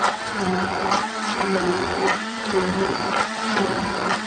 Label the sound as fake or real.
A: fake